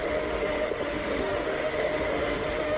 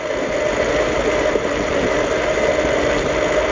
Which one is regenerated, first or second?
first